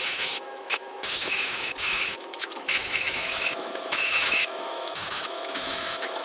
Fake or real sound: fake